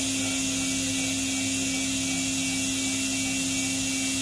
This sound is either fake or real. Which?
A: real